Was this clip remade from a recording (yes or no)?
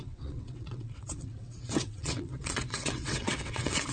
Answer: yes